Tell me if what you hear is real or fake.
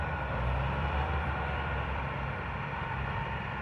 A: fake